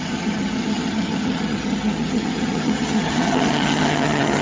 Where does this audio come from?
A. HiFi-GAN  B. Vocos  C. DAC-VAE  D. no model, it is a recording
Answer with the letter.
A